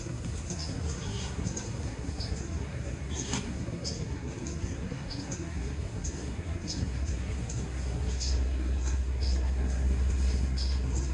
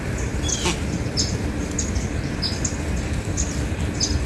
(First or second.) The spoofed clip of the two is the first